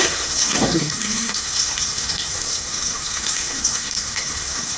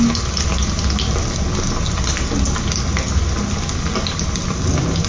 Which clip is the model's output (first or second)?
first